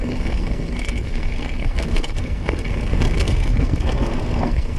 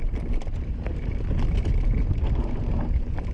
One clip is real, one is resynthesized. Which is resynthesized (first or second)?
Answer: first